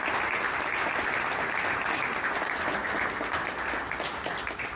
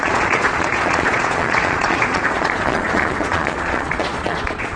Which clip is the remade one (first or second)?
second